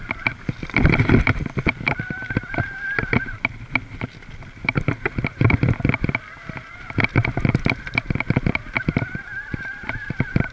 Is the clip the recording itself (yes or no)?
no